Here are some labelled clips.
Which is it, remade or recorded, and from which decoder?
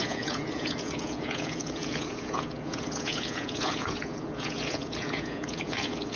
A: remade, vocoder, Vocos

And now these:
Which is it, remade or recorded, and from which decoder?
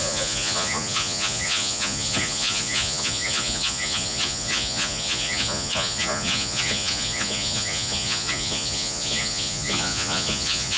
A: remade, vocoder, Vocos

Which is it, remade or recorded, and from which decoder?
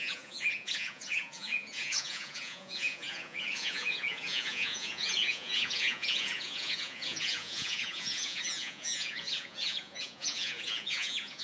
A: remade, vocoder, Vocos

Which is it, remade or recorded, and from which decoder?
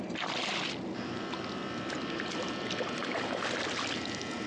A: recorded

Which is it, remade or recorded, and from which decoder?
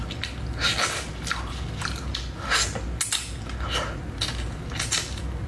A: recorded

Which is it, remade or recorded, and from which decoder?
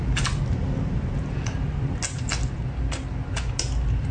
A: recorded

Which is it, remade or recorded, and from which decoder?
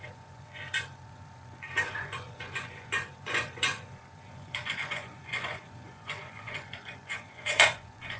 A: remade, vocoder, Vocos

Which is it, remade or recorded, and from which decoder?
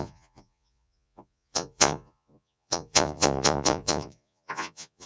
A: remade, vocoder, Vocos